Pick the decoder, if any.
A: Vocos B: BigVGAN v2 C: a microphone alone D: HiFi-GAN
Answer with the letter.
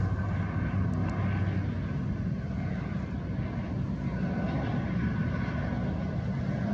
C